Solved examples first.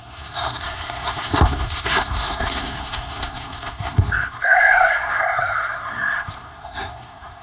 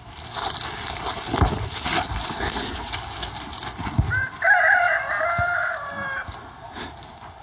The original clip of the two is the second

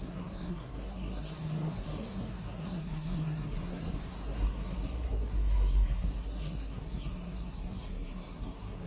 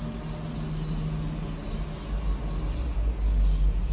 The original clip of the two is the second